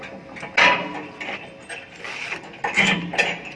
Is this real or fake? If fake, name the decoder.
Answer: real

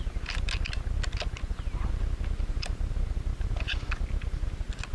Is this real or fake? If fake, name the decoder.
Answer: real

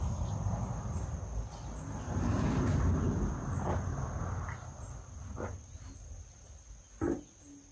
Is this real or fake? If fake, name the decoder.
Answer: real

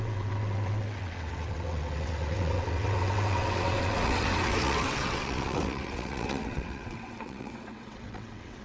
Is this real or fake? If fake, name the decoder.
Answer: fake, vocoder, WaveNeXt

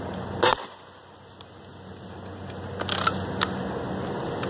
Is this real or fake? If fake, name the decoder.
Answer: real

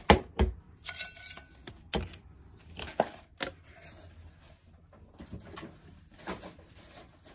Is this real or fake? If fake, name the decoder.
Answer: real